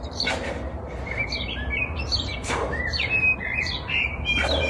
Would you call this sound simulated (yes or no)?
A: yes